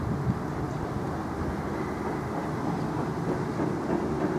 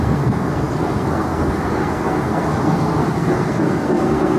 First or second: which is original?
first